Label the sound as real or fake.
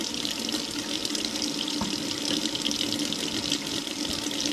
real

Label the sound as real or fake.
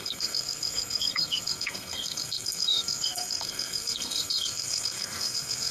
fake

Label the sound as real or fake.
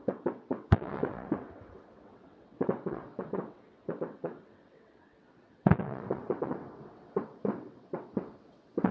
fake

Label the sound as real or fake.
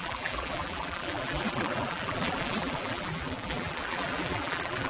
fake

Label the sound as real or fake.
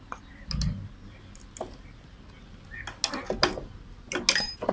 real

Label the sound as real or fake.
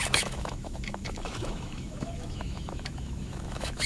fake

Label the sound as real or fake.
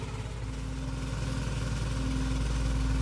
real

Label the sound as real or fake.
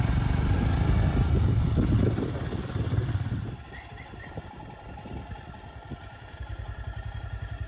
fake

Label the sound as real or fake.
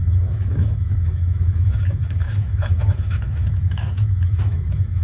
fake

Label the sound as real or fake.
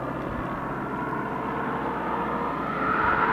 real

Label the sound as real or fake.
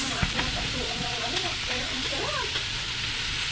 fake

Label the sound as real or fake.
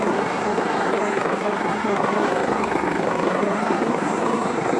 fake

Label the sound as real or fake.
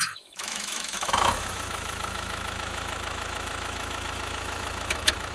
fake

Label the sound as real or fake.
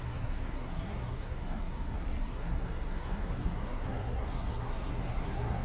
fake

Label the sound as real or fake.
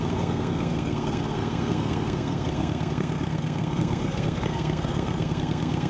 fake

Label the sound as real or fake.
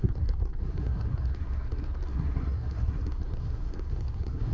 fake